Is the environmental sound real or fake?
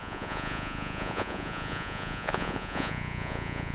fake